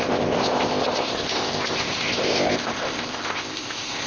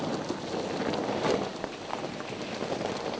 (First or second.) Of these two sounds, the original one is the second